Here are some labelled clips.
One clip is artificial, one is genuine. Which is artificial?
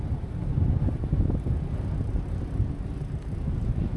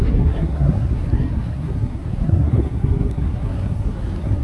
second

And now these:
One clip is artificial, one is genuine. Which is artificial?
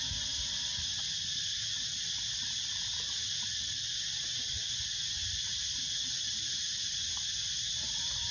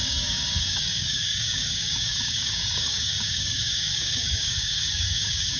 second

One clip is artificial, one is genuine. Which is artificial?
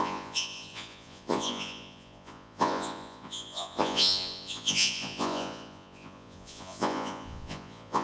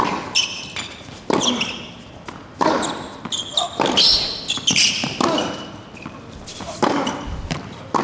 first